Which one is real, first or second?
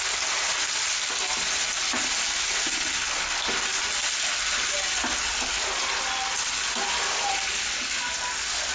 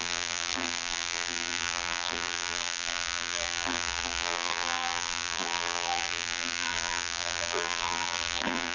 first